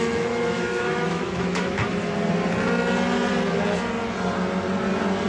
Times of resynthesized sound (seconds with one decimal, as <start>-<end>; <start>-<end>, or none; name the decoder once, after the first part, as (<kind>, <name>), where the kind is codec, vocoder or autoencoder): 0.0-1.8 (autoencoder, DAC-VAE)